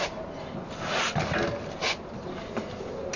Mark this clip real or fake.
real